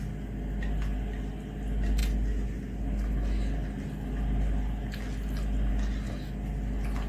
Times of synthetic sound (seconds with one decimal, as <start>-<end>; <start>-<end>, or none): none

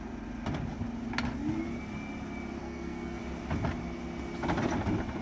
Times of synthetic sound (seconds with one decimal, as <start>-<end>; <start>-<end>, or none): 2.6-3.2

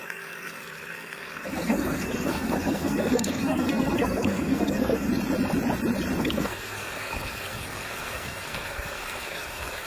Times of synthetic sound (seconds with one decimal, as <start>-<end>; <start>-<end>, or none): 0.0-5.1; 6.2-9.9

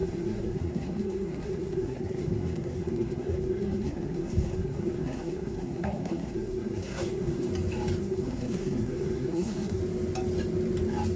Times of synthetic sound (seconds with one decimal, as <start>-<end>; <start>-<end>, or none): 0.0-7.5; 8.0-9.8

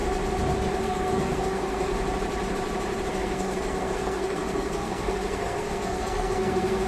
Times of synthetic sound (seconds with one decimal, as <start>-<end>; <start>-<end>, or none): 0.8-1.9; 3.1-6.9

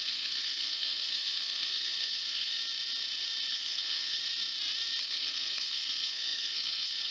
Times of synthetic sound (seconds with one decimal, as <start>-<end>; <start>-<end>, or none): 0.0-2.6; 3.5-4.2; 5.0-7.1

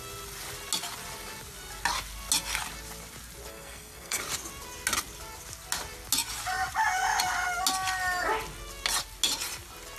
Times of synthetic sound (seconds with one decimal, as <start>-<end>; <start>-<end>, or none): 3.5-4.2